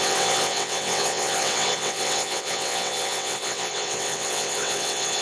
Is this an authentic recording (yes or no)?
no